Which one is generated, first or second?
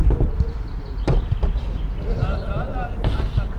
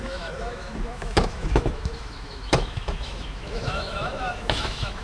second